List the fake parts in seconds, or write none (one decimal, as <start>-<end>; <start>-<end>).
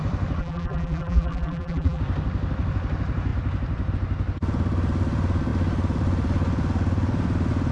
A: 0.4-2.0